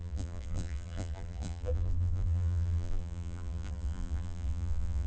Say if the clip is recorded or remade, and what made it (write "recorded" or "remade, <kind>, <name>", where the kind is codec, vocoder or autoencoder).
remade, vocoder, BigVGAN v2